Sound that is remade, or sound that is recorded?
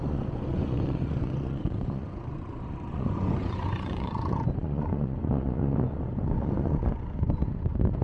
remade